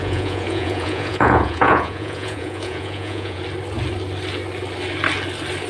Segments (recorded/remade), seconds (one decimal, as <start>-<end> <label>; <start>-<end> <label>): 0.0-3.4 remade; 3.4-5.7 recorded